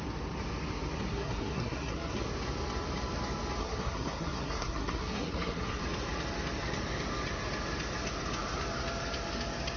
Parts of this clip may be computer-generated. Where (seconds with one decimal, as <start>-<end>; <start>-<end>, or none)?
1.1-2.2; 3.6-5.8